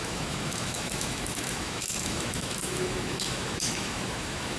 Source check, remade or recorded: remade